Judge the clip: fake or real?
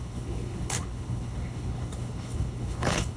fake